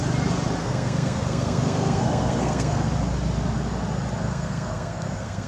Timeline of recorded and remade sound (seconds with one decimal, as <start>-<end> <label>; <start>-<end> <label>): 0.0-0.6 recorded; 0.6-2.9 remade; 2.9-4.2 recorded; 4.2-5.5 remade